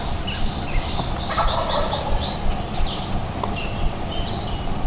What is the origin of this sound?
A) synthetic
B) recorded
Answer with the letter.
B